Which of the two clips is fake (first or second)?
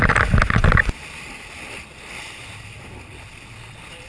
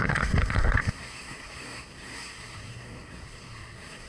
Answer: second